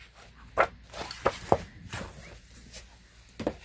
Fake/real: real